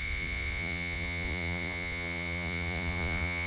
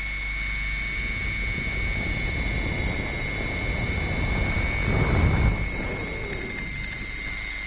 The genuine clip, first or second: second